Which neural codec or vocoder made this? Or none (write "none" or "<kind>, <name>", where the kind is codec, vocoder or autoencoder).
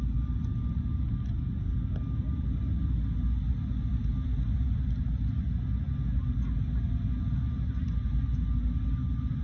none